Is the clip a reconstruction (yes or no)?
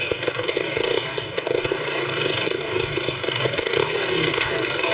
yes